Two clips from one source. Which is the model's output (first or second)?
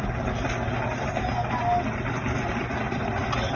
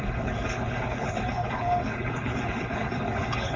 second